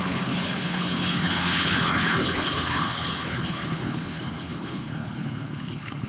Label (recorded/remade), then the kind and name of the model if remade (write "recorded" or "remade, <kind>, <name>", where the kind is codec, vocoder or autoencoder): remade, codec, HILCodec